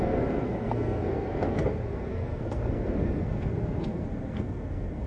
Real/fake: fake